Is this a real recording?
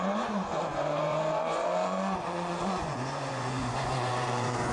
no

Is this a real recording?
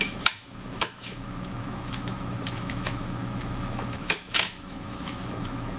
no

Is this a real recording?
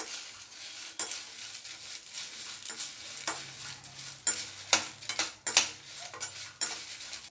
yes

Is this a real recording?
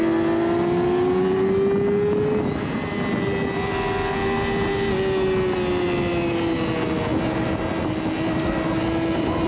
yes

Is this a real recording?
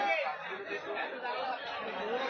yes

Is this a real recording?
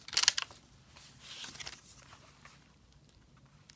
yes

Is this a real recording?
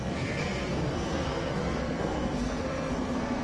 no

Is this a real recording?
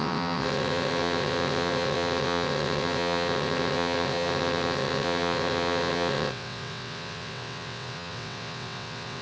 no